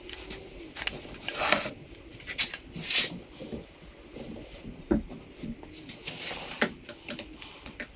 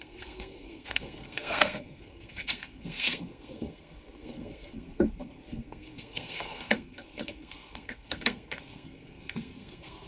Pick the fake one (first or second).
second